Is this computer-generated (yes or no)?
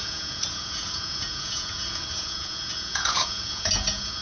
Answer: yes